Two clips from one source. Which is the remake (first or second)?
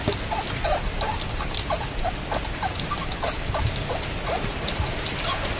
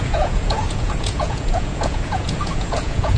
second